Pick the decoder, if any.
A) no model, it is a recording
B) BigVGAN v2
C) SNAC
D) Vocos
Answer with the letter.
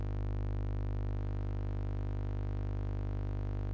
A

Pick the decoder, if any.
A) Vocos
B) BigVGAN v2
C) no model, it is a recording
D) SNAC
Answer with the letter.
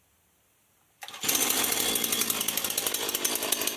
C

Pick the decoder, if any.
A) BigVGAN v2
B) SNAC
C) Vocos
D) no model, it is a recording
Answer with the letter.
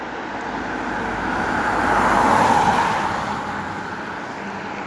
D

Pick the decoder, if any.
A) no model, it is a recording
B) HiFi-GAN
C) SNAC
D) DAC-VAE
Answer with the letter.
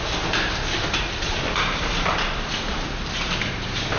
A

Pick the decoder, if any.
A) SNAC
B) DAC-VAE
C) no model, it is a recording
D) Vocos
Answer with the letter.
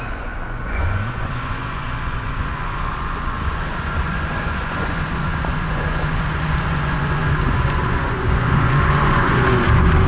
D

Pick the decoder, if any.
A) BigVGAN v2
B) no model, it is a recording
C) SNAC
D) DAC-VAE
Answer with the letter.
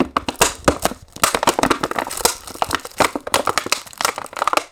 B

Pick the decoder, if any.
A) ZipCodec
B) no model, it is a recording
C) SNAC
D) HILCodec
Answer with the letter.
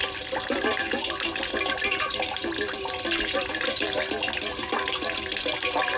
B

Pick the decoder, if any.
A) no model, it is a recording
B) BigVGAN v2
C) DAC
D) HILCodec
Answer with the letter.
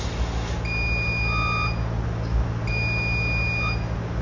A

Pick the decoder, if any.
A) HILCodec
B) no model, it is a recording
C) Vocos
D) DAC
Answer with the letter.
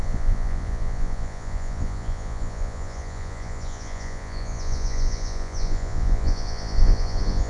C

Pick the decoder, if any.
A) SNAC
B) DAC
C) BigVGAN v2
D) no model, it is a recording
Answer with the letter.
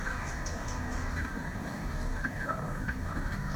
B